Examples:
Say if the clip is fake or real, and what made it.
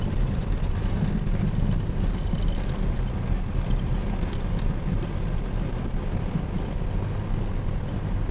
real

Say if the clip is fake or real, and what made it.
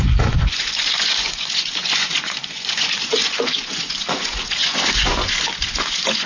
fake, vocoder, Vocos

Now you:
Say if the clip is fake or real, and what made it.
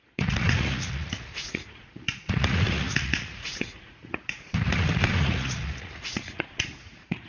fake, vocoder, Vocos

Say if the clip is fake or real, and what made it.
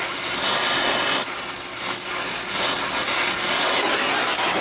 real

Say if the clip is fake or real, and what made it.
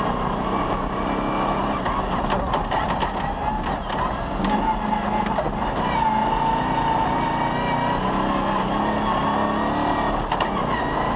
real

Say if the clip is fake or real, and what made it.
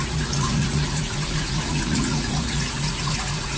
fake, vocoder, Vocos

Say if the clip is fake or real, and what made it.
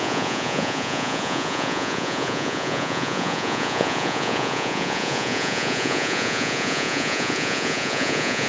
fake, vocoder, Vocos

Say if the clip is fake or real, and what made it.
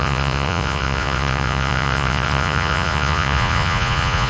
fake, vocoder, Vocos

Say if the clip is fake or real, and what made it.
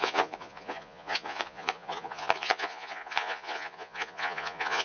fake, vocoder, Vocos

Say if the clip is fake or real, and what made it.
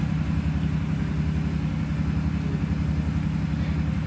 real